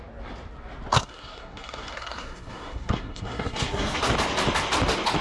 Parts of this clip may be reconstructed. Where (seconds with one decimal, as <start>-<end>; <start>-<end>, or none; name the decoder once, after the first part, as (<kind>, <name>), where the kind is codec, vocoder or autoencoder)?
0.9-4.0 (codec, SNAC)